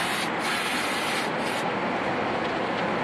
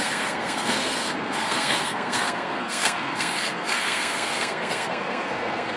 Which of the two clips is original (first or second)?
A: first